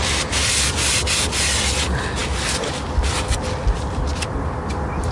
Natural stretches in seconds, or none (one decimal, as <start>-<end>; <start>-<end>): 0.0-5.1